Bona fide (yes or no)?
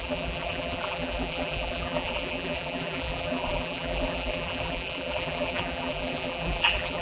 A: no